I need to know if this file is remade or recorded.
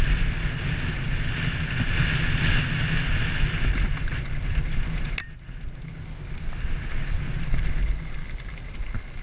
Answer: recorded